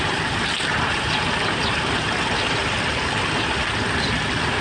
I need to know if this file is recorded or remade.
recorded